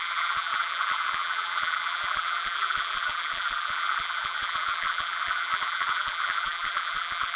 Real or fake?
fake